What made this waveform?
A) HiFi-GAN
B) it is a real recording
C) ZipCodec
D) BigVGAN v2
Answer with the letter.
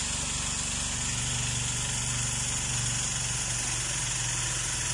B